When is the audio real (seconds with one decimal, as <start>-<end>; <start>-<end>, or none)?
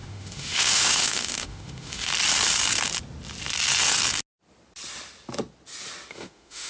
2.1-6.1